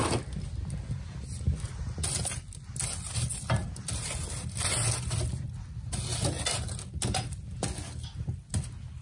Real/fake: real